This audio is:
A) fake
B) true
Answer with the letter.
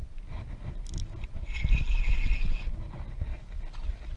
B